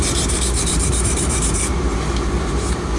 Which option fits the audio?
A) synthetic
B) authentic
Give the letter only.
A